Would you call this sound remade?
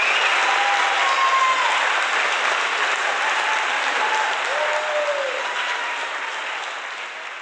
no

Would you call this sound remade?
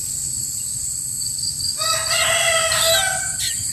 no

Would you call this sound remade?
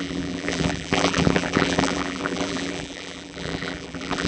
yes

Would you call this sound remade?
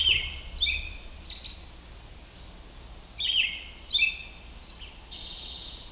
no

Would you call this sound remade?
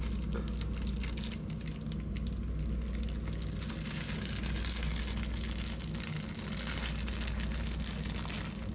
no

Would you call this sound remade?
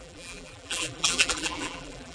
yes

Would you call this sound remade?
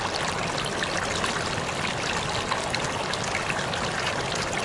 no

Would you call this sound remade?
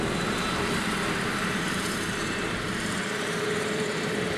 yes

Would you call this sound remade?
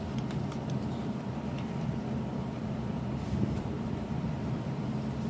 yes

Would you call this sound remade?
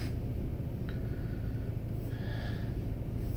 no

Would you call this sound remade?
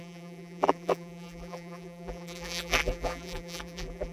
yes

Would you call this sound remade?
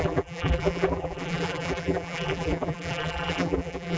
yes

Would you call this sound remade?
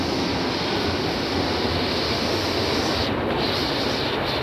no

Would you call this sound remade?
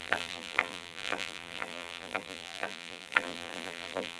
yes